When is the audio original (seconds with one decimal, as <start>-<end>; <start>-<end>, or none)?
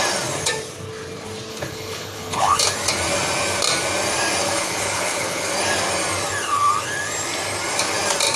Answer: 0.0-1.5; 2.6-4.4; 5.5-8.4